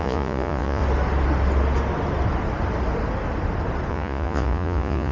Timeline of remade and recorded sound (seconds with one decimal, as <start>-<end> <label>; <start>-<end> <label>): 0.0-0.8 remade; 0.8-3.9 recorded; 3.9-5.1 remade